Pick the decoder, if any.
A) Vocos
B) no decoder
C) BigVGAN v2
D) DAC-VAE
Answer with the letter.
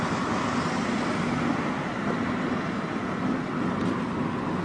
B